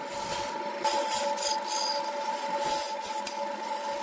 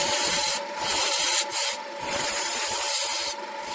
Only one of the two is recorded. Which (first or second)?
first